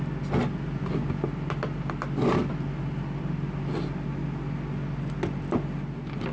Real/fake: real